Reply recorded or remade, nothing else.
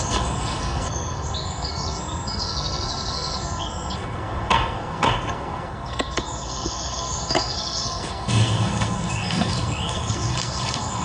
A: remade